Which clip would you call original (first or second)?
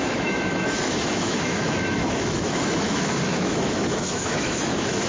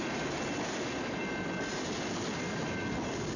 second